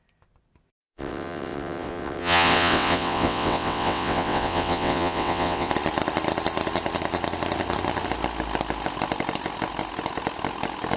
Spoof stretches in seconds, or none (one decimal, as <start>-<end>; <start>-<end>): 0.8-5.7